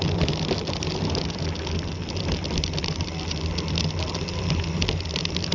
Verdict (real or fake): fake